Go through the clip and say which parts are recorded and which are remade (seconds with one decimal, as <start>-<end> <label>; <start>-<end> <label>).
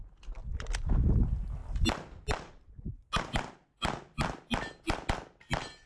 0.0-0.4 recorded; 0.4-0.9 remade; 0.9-5.9 recorded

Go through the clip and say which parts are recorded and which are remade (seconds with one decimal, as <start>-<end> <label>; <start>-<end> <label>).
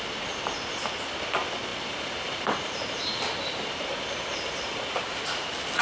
0.0-1.7 recorded; 1.7-5.2 remade; 5.2-5.8 recorded